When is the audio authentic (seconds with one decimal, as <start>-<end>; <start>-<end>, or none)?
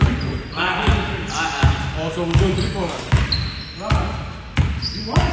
0.0-5.3